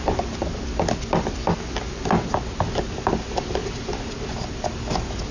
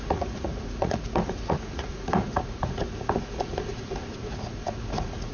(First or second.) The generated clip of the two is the second